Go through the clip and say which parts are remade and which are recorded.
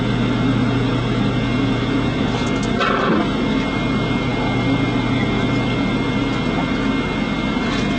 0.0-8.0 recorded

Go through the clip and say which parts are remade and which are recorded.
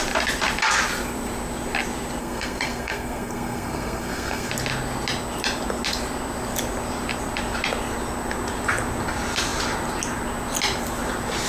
0.0-2.2 recorded; 2.2-4.5 remade; 4.5-11.5 recorded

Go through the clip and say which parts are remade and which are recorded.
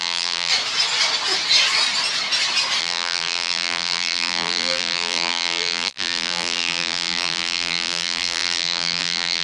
0.0-0.5 remade; 0.5-2.8 recorded; 2.8-9.4 remade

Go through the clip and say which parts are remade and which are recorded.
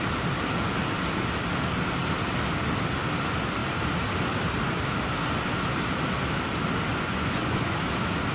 0.0-6.9 recorded; 6.9-7.8 remade; 7.8-8.3 recorded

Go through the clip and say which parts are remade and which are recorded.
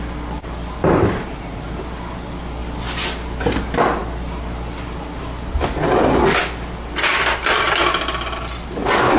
0.0-0.8 recorded; 0.8-1.8 remade; 1.8-9.2 recorded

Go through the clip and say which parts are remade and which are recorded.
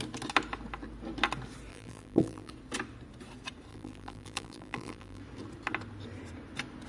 0.0-1.7 recorded; 1.7-2.5 remade; 2.5-3.7 recorded; 3.7-5.2 remade; 5.2-6.9 recorded